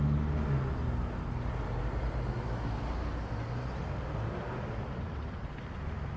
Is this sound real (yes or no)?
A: yes